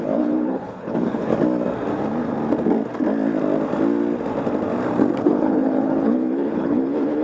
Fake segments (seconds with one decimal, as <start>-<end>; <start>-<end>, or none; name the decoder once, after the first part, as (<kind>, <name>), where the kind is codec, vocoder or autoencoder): 0.0-1.3 (codec, HILCodec); 5.2-7.2